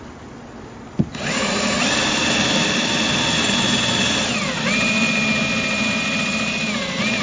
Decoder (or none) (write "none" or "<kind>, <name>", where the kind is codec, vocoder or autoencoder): none